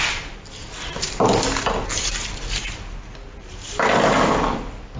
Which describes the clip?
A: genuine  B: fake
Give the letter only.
A